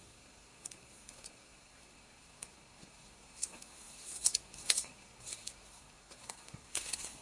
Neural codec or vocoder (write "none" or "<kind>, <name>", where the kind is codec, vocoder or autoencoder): codec, SNAC